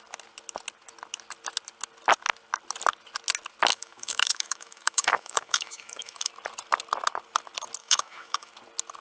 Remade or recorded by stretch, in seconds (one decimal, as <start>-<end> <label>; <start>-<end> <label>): 0.0-3.7 recorded; 3.7-6.3 remade; 6.3-7.8 recorded; 7.8-8.5 remade; 8.5-9.0 recorded